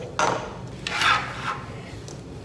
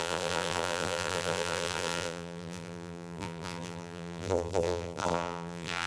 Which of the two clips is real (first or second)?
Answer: first